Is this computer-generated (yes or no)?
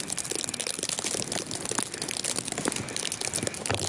no